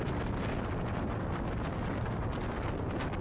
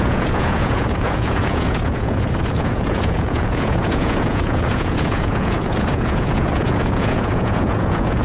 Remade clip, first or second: second